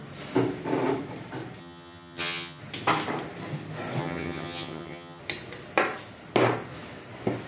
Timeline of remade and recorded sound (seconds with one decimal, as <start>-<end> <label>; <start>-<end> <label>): 0.0-1.6 recorded; 1.6-2.6 remade; 2.6-4.0 recorded; 4.0-5.2 remade; 5.2-7.5 recorded